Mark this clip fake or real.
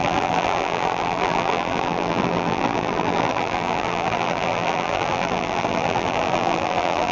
fake